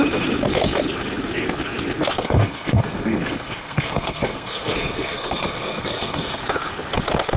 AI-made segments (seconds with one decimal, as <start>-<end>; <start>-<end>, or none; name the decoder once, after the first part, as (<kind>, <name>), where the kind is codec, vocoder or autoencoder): 2.2-6.4 (codec, SNAC)